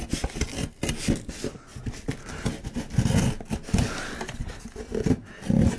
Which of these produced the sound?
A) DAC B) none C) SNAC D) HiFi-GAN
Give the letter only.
B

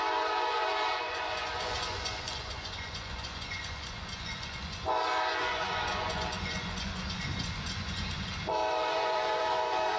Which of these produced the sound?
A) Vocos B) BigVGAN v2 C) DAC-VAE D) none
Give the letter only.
A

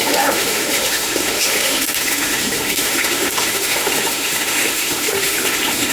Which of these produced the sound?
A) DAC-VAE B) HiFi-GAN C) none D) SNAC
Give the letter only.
A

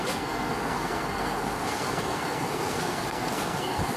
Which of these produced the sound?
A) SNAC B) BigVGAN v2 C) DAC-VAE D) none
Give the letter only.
A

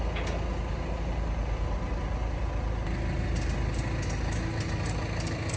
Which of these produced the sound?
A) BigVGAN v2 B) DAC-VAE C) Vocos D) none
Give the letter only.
D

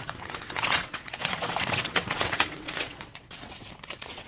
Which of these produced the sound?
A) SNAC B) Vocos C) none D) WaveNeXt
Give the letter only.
D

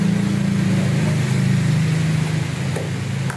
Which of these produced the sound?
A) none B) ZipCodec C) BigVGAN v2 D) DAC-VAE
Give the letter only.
A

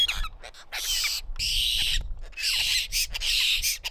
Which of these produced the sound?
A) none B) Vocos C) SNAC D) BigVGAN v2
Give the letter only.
A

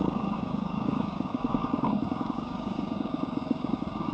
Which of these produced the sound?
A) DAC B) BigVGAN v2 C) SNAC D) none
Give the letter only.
A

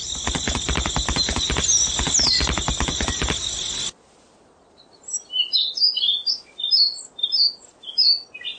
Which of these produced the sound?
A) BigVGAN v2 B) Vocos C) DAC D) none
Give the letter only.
D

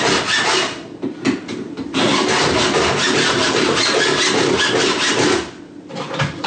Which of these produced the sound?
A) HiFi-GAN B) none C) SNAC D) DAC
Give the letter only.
B